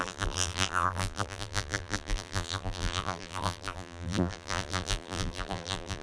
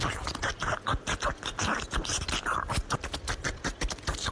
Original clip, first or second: second